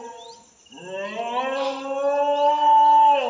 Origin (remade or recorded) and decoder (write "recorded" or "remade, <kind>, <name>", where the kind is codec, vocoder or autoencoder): recorded